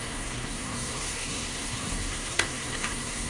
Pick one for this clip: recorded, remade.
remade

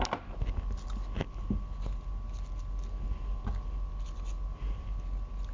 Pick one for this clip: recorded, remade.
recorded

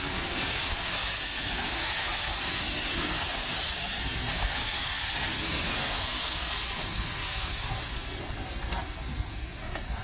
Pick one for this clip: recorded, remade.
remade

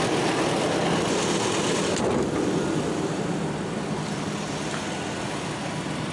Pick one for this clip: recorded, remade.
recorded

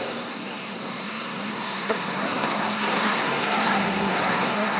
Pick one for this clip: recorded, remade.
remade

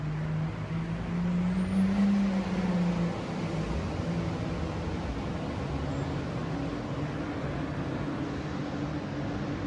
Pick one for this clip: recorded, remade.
recorded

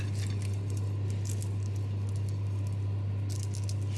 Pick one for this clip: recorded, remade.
recorded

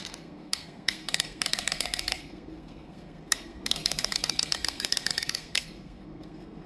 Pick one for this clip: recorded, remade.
remade